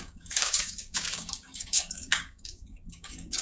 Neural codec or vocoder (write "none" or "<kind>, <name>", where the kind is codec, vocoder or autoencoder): codec, DAC